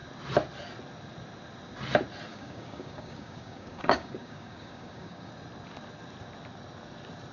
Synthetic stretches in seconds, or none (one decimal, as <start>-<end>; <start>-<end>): 2.3-5.3